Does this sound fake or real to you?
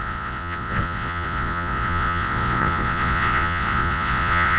fake